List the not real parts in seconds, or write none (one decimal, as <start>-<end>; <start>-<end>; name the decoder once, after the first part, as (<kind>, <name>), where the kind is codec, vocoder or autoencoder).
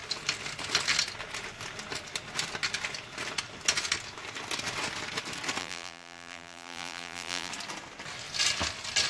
5.6-7.5 (vocoder, BigVGAN v2)